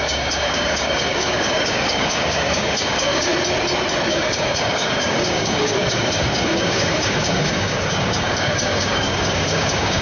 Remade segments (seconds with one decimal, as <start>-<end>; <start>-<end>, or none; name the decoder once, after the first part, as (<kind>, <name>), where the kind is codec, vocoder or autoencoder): 0.0-3.3 (codec, DAC); 4.1-10.0